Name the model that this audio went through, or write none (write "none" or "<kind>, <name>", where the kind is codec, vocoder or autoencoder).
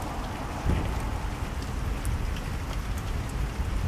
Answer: none